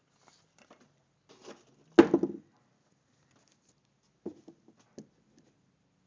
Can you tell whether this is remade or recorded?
recorded